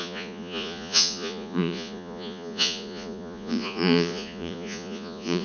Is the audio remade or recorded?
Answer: remade